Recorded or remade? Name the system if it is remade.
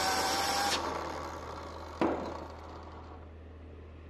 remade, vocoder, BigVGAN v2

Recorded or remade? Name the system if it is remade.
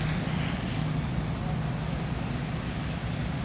recorded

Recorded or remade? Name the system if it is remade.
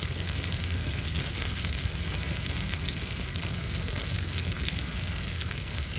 remade, codec, SNAC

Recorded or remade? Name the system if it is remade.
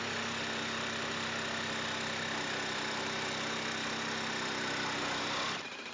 recorded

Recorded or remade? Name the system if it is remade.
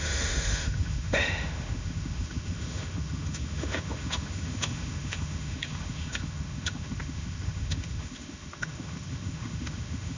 remade, autoencoder, DAC-VAE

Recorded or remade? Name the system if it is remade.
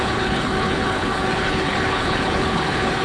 remade, codec, HILCodec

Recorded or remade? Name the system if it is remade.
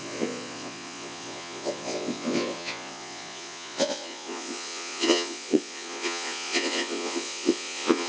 remade, vocoder, Vocos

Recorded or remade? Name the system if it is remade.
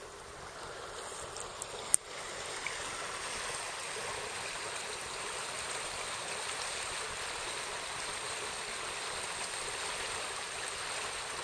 recorded